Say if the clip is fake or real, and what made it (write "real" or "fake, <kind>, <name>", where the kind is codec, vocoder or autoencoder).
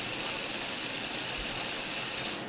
real